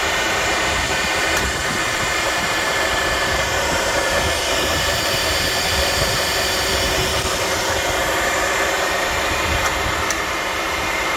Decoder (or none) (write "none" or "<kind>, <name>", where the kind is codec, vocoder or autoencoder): vocoder, BigVGAN v2